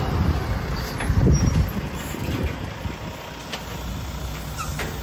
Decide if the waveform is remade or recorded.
recorded